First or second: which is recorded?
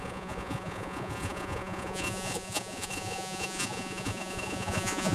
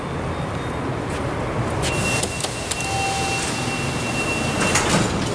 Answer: second